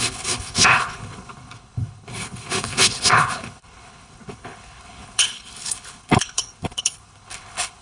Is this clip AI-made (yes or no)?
yes